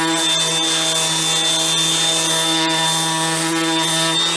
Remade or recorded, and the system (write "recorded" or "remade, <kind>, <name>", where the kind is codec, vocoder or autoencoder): recorded